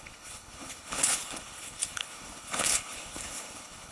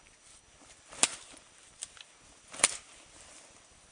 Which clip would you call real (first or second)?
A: second